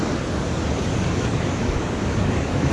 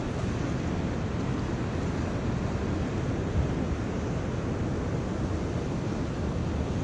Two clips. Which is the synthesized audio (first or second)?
first